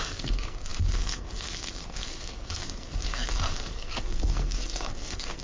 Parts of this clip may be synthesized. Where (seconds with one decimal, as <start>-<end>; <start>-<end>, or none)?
0.0-5.4